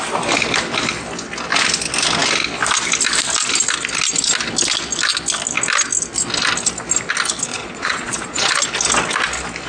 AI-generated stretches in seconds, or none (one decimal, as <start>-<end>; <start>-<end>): 7.5-8.5